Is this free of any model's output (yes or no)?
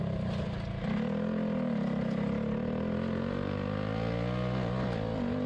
yes